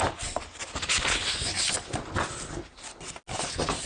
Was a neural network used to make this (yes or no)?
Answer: no